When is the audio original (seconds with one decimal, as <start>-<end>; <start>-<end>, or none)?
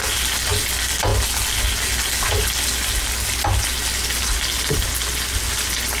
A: 0.0-6.0